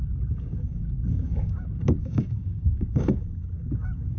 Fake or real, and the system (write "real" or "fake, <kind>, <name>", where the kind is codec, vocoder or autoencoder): fake, codec, DAC